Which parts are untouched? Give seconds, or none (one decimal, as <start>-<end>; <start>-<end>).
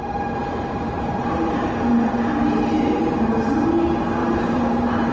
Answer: 0.0-0.4; 1.7-4.2